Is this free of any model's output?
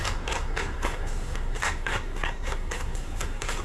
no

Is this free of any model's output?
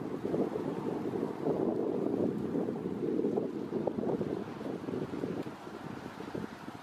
yes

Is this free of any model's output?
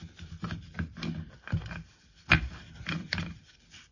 yes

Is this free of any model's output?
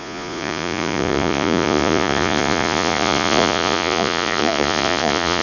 no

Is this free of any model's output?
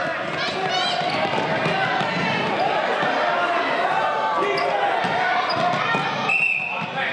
yes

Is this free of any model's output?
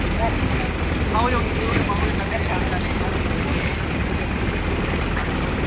yes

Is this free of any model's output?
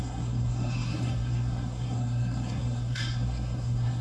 no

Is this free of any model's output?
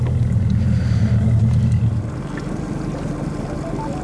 yes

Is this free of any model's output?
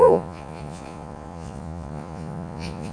no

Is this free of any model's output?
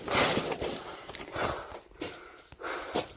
yes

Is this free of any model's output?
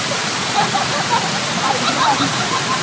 yes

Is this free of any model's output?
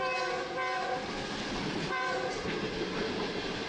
yes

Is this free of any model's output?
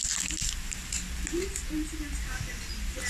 yes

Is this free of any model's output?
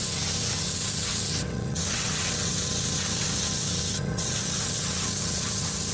no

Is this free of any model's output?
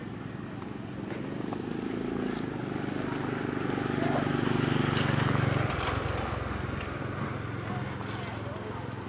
yes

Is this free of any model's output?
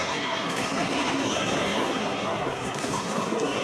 no